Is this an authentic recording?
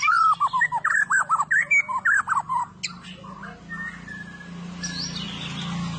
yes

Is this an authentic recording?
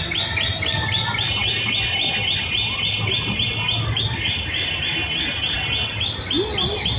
yes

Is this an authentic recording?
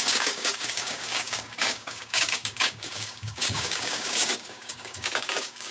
no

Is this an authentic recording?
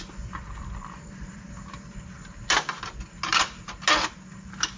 yes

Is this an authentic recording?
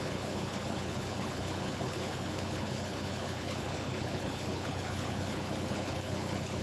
no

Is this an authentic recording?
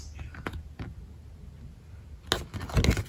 yes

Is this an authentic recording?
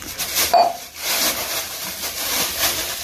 no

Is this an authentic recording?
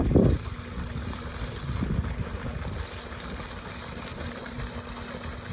yes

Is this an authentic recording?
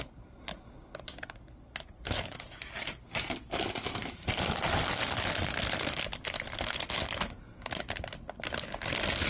yes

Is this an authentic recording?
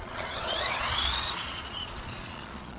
no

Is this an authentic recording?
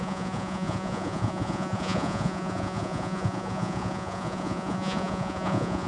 no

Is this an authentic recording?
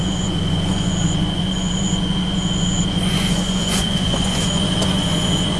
no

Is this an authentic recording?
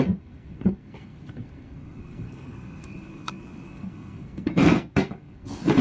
no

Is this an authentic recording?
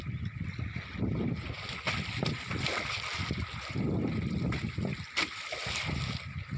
yes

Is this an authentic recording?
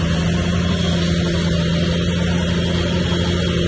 yes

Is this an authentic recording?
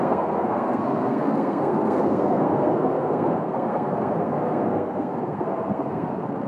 no